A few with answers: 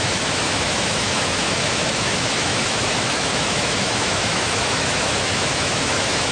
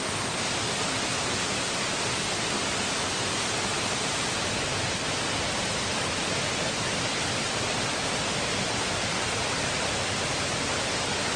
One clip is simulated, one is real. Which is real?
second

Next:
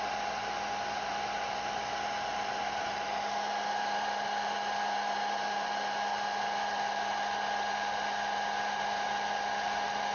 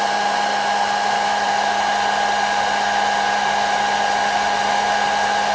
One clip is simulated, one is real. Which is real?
second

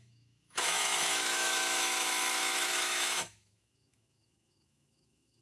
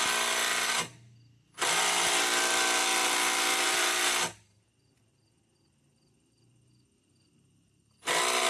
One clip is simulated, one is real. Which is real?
second